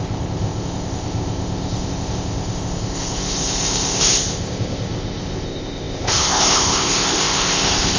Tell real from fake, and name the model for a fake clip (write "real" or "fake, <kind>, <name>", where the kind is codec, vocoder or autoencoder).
fake, codec, ZipCodec